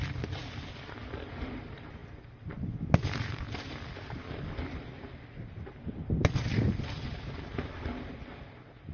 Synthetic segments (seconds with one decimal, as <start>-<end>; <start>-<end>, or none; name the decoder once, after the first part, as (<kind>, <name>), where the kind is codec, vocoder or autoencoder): none